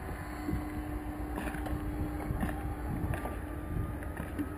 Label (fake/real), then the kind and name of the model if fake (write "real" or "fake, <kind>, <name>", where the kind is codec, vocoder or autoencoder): real